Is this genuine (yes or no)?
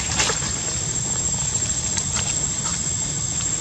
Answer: yes